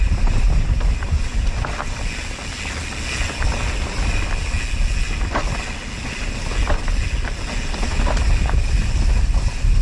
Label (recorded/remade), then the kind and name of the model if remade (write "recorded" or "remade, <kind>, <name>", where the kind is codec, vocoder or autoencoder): recorded